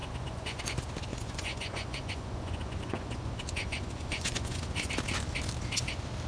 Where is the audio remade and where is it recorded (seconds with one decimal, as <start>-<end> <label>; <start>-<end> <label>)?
0.0-0.6 remade; 0.6-1.1 recorded; 1.1-4.9 remade; 4.9-6.3 recorded